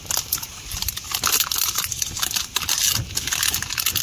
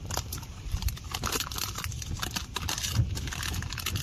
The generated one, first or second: second